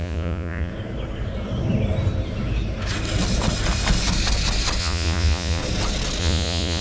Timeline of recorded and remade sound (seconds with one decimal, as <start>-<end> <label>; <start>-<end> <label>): 0.0-0.7 remade; 0.7-4.8 recorded; 4.8-5.6 remade; 5.6-6.2 recorded; 6.2-6.8 remade